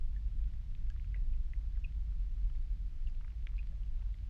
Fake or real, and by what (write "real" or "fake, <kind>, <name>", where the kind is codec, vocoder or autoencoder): real